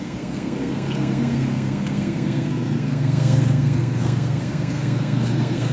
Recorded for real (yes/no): no